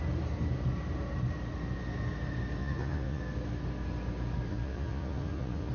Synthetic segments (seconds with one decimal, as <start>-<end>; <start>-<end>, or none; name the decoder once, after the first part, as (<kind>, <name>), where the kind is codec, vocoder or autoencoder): 2.6-3.2 (vocoder, Vocos); 4.5-5.7